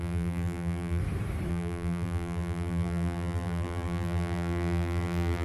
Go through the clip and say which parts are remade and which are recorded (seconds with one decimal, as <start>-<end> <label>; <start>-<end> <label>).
0.0-1.0 remade; 1.0-1.5 recorded; 1.5-5.4 remade